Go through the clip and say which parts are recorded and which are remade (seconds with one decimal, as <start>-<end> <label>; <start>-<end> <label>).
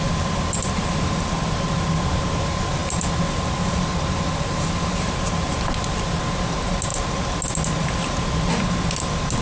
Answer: 0.0-9.4 recorded